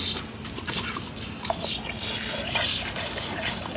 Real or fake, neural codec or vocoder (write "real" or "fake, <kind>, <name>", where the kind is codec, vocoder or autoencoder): real